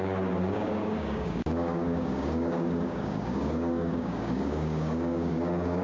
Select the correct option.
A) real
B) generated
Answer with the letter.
B